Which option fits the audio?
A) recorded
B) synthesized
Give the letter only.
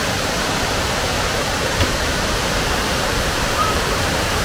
B